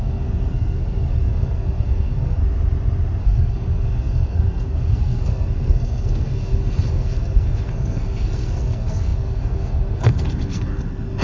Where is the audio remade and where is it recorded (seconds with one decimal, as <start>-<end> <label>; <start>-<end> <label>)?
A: 0.0-2.4 remade; 2.4-3.2 recorded; 3.2-11.2 remade